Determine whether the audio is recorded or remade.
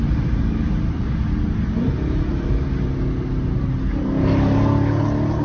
recorded